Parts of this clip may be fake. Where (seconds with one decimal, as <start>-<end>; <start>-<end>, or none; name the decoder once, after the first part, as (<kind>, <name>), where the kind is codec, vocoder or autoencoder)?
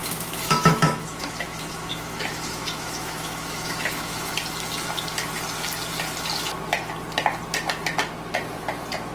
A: 0.0-4.3 (autoencoder, DAC-VAE)